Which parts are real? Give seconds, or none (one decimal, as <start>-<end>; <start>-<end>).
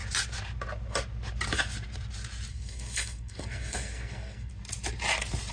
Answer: 0.0-2.5; 4.5-5.5